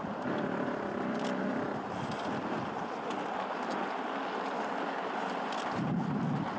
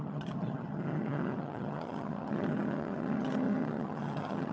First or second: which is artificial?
second